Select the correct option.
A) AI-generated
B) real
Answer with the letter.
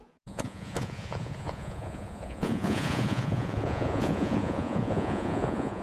A